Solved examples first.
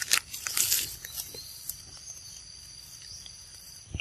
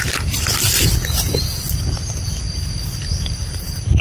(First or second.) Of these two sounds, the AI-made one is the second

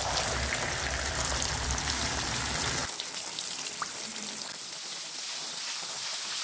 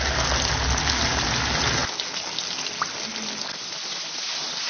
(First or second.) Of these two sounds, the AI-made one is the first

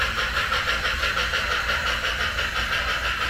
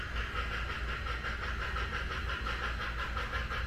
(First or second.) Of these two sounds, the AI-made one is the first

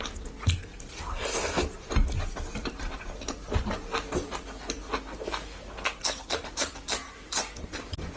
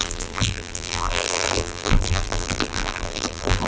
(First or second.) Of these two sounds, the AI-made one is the second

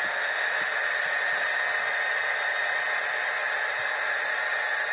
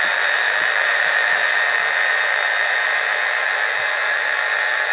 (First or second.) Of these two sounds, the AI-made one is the second